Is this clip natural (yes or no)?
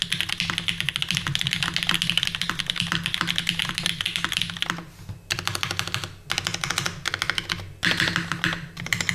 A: yes